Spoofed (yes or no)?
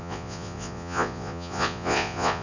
yes